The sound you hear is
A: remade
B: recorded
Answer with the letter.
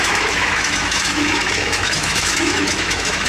A